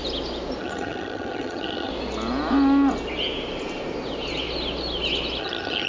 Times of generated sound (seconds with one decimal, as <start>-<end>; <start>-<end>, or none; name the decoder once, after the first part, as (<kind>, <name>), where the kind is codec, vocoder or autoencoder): 0.6-1.9 (vocoder, HiFi-GAN); 5.4-5.9